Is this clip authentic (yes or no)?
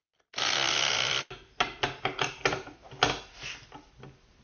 yes